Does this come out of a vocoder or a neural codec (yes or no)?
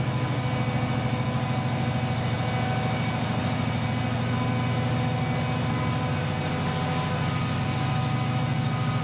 no